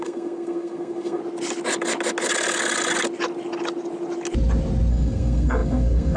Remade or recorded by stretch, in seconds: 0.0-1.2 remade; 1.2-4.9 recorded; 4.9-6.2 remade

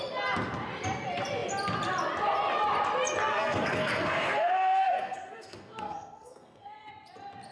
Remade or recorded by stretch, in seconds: 0.0-3.3 recorded; 3.3-6.9 remade; 6.9-7.5 recorded

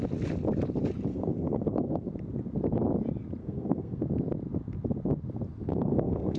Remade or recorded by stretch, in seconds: 0.0-1.1 recorded; 1.1-2.1 remade; 2.1-3.4 recorded; 3.4-4.0 remade; 4.0-5.7 recorded; 5.7-6.4 remade

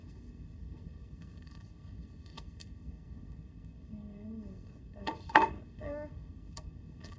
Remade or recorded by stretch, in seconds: 0.0-7.2 remade

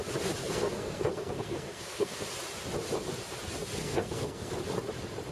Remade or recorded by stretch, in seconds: 0.0-0.4 recorded; 0.4-2.3 remade; 2.3-3.8 recorded; 3.8-4.5 remade; 4.5-5.3 recorded

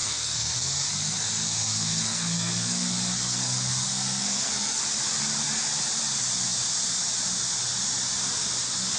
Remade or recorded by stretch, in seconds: 0.0-4.8 remade; 4.8-9.0 recorded